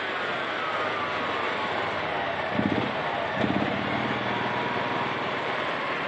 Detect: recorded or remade remade